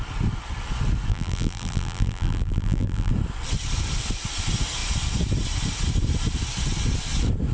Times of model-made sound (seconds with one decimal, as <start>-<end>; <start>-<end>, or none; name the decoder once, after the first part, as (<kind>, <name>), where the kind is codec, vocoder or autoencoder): 1.1-3.1 (vocoder, BigVGAN v2)

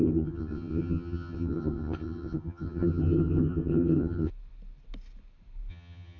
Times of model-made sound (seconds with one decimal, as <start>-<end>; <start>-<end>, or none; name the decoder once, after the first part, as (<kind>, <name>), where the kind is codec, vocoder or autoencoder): 0.0-4.3 (vocoder, HiFi-GAN); 5.7-6.2

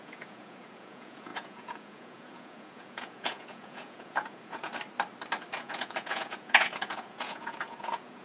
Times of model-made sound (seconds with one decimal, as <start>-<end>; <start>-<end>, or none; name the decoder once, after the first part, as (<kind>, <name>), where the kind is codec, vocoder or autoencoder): 0.0-4.7 (vocoder, Vocos); 5.5-8.2

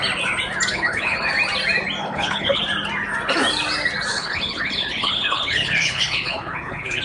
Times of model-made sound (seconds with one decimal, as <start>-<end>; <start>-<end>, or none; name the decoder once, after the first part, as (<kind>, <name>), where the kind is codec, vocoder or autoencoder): 0.7-1.3 (codec, HILCodec); 2.0-2.6; 4.1-7.0

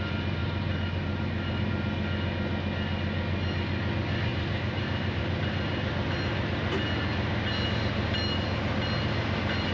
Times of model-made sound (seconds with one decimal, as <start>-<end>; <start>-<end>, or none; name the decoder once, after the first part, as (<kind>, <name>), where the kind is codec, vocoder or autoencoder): 0.4-1.7 (vocoder, BigVGAN v2); 4.3-5.2

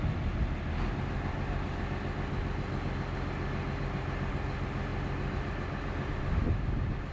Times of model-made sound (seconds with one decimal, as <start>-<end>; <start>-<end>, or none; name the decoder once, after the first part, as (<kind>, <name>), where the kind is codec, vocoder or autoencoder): none

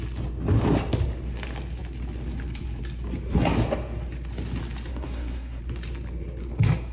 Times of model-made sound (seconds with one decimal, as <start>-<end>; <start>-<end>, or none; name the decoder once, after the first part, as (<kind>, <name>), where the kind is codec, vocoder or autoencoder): 4.9-5.6 (codec, SNAC)